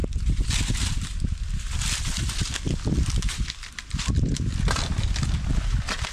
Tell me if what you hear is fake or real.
real